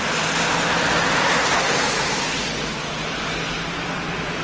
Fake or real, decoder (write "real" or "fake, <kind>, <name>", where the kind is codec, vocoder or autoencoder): real